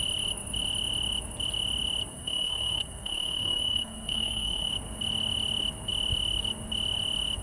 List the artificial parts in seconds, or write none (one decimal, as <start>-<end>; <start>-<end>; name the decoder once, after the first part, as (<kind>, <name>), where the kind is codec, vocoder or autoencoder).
2.1-4.7 (codec, SNAC)